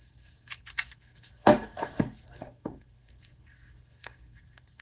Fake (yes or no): yes